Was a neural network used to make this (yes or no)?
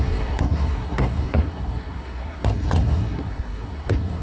yes